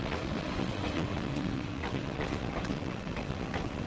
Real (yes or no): no